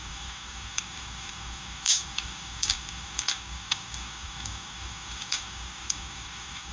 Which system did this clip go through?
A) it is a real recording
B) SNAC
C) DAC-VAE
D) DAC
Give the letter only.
D